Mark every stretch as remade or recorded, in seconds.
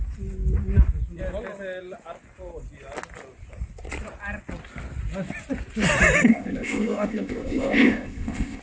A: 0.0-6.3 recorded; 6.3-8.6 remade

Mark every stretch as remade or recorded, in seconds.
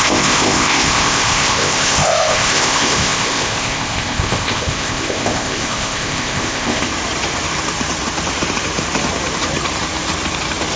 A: 0.0-6.9 remade; 6.9-10.8 recorded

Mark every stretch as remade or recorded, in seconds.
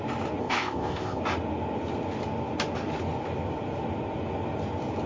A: 0.0-0.4 recorded; 0.4-1.2 remade; 1.2-5.1 recorded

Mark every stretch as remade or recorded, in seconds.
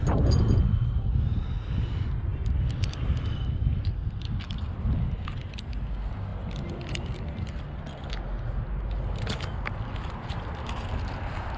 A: 0.0-11.6 recorded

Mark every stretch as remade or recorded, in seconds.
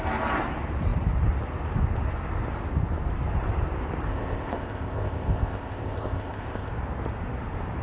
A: 0.0-4.1 recorded; 4.1-6.7 remade; 6.7-7.8 recorded